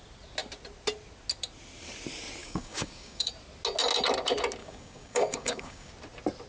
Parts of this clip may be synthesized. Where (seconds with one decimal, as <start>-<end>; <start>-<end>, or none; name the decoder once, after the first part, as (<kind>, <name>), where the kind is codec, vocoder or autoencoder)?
2.4-3.3 (codec, DAC); 4.6-5.9